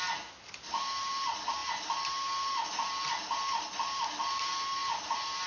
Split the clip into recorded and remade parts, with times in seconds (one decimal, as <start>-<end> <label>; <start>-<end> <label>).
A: 0.0-5.5 recorded

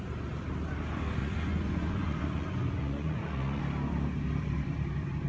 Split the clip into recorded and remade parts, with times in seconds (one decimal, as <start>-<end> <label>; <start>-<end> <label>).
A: 0.0-1.2 recorded; 1.2-3.6 remade; 3.6-5.3 recorded

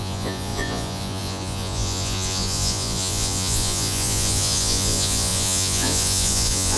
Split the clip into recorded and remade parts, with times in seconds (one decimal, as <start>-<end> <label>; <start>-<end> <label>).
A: 0.0-6.8 remade

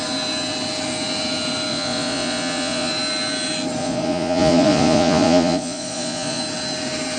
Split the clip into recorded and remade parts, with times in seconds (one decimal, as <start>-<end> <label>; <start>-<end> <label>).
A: 0.0-1.7 recorded; 1.7-2.9 remade; 2.9-3.8 recorded; 3.8-6.4 remade; 6.4-7.2 recorded

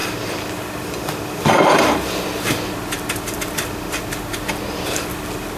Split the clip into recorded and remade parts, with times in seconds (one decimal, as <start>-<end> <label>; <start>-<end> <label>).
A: 0.0-5.6 recorded